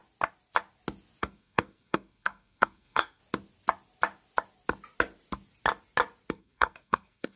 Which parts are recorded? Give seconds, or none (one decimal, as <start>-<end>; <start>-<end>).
0.0-1.2; 3.2-6.3